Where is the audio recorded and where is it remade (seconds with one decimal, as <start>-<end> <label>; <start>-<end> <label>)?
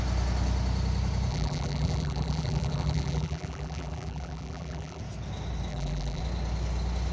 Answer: 0.0-1.3 recorded; 1.3-5.0 remade; 5.0-5.7 recorded; 5.7-6.2 remade; 6.2-7.1 recorded